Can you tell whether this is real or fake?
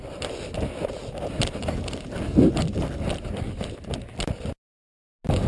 real